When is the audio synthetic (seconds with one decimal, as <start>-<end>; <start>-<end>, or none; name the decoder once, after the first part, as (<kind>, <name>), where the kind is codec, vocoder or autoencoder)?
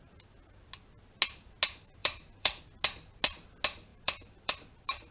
2.0-2.6 (vocoder, BigVGAN v2); 3.9-5.1